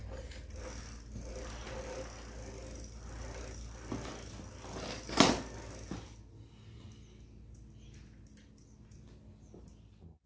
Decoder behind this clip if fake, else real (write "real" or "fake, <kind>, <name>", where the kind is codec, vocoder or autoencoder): real